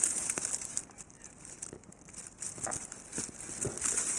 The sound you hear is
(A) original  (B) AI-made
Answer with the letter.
A